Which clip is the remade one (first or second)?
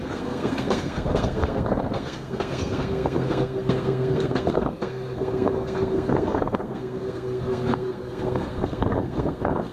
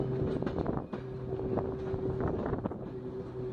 first